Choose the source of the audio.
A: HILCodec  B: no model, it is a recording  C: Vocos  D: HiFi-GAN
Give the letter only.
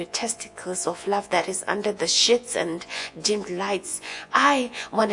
C